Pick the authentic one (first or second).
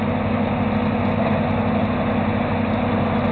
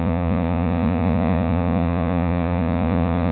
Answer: first